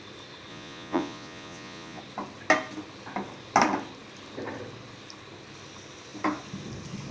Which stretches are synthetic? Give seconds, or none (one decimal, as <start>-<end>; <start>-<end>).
0.5-2.0